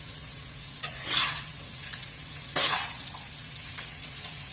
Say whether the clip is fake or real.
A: fake